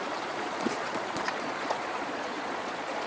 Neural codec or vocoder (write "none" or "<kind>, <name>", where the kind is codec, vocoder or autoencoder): vocoder, Vocos